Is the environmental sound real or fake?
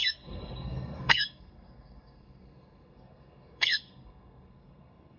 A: fake